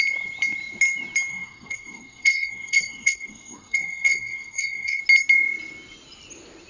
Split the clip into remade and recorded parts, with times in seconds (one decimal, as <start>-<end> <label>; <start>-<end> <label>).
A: 0.0-1.3 recorded; 1.3-5.0 remade; 5.0-6.7 recorded